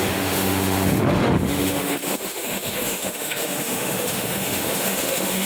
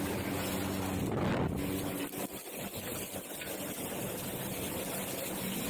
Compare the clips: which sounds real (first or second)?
second